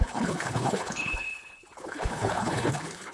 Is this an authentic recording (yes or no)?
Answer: no